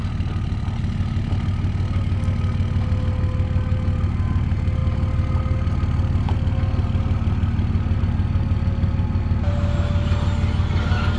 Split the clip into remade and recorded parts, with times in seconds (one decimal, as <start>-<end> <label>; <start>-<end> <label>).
0.0-11.2 recorded